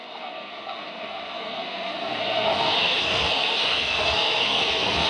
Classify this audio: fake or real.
fake